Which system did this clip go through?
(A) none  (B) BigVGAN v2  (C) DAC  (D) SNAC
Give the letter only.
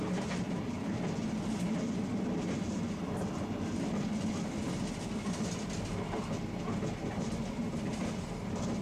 A